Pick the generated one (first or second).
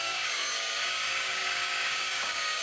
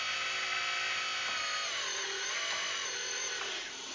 first